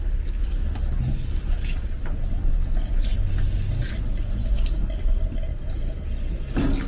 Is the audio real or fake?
real